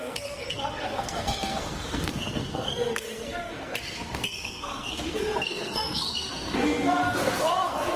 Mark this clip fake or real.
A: fake